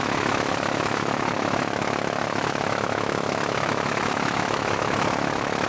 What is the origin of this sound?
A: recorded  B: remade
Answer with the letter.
B